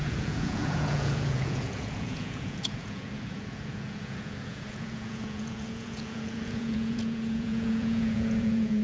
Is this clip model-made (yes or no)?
yes